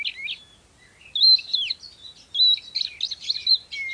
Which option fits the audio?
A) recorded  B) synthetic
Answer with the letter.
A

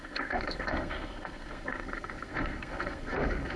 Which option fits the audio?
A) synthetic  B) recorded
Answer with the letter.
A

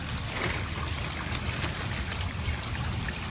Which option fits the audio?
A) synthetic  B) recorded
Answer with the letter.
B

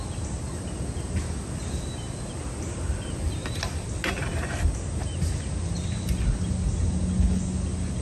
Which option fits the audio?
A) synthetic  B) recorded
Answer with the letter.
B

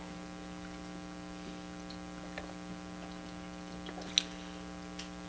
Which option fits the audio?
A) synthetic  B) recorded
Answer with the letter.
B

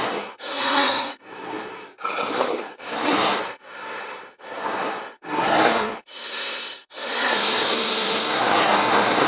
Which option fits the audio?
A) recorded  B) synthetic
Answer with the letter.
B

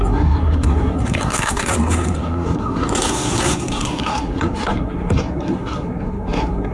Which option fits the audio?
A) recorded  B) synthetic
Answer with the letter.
B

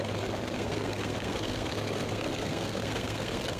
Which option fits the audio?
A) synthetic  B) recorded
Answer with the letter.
A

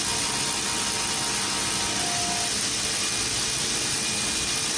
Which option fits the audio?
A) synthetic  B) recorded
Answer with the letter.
B